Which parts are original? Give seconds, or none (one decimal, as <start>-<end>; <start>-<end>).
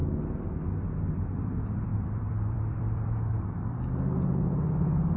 0.0-1.9; 3.6-5.2